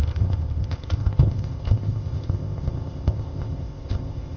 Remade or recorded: remade